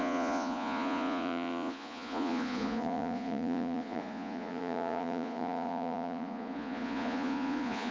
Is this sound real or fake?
fake